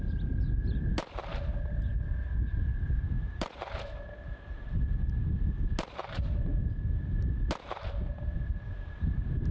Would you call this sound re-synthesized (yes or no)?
no